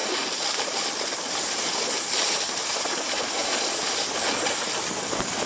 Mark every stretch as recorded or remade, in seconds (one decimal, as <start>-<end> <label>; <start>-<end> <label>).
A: 0.0-5.5 recorded